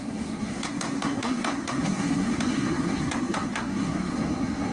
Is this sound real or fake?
fake